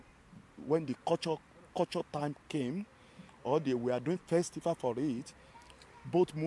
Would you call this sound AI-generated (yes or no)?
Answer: no